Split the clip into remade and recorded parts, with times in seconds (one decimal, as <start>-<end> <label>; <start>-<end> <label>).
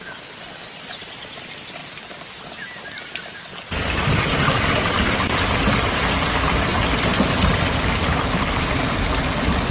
0.0-1.8 remade; 1.8-3.7 recorded; 3.7-9.7 remade